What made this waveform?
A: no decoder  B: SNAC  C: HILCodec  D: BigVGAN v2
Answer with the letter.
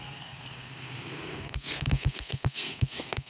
B